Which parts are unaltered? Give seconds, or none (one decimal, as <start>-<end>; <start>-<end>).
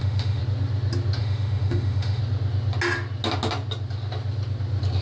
0.4-1.2; 2.2-5.0